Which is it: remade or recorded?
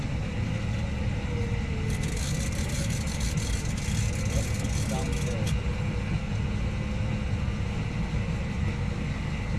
recorded